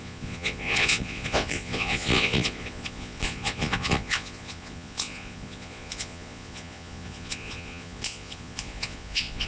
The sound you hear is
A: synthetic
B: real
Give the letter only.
A